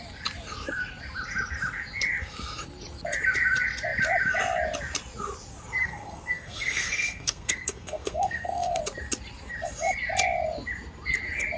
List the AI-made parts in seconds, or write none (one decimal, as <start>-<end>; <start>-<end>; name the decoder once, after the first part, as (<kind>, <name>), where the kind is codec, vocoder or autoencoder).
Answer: 5.8-8.8 (codec, SNAC)